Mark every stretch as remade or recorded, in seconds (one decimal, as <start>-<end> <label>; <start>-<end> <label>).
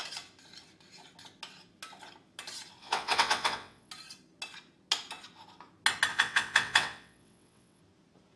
0.0-2.8 recorded; 2.8-3.9 remade; 3.9-6.1 recorded; 6.1-7.8 remade; 7.8-8.4 recorded